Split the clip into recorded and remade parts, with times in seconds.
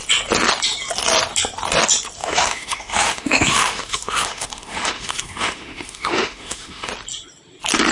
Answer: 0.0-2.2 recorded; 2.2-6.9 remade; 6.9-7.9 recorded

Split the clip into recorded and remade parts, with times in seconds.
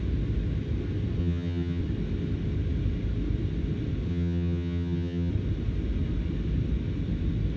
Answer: 0.0-1.2 recorded; 1.2-1.8 remade; 1.8-4.1 recorded; 4.1-5.3 remade; 5.3-7.6 recorded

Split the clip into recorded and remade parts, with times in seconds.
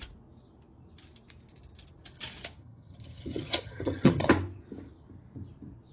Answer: 0.0-2.6 recorded; 2.6-4.3 remade; 4.3-5.9 recorded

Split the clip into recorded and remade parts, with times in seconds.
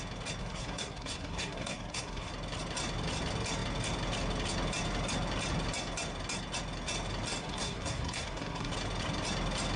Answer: 0.0-0.4 recorded; 0.4-2.3 remade; 2.3-7.4 recorded; 7.4-8.7 remade; 8.7-9.8 recorded